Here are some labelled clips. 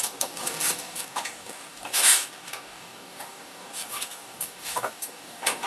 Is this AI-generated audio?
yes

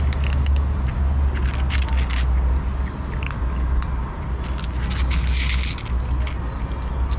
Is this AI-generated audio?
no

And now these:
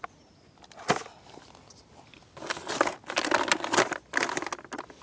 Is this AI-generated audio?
no